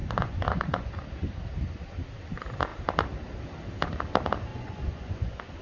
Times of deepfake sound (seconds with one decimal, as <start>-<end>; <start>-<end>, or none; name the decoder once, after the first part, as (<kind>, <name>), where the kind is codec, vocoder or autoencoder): 0.0-1.0 (vocoder, Vocos); 4.5-5.6